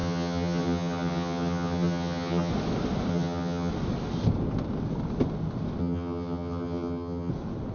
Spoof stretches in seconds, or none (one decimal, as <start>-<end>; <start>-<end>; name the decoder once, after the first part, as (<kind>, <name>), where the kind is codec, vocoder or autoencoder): 0.0-2.5 (vocoder, HiFi-GAN); 3.1-3.7; 5.8-7.3